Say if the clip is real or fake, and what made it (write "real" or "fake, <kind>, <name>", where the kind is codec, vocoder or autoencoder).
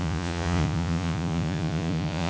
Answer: fake, vocoder, Vocos